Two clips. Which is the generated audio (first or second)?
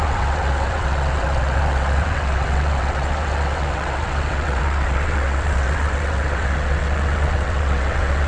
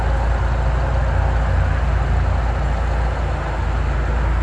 first